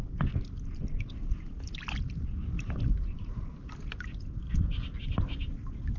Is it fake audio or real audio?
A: real